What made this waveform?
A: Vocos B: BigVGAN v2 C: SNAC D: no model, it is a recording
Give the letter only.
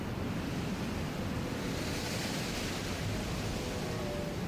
D